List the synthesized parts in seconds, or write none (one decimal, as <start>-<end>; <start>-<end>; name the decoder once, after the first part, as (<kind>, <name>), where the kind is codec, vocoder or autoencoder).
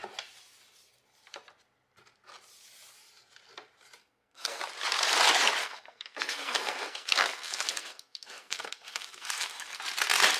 4.0-4.6 (codec, SNAC); 5.6-9.8